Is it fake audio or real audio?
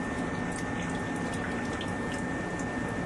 real